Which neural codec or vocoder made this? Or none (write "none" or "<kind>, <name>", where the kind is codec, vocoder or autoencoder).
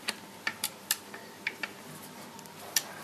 none